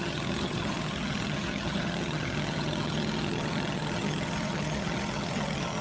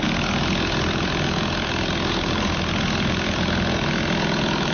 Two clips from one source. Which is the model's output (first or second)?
first